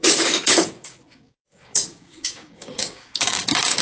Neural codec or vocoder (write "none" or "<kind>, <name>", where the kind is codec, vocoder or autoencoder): codec, DAC